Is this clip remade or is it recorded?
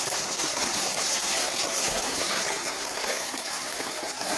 remade